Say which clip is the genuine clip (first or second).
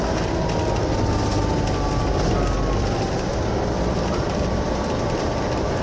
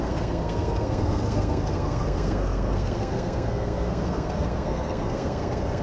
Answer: first